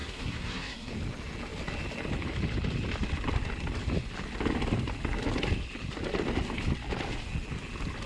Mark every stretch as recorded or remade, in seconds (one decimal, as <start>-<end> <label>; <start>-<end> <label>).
0.0-0.9 remade; 0.9-8.1 recorded